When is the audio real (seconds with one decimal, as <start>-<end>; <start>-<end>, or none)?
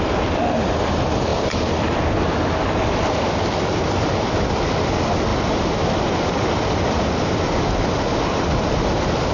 0.0-9.3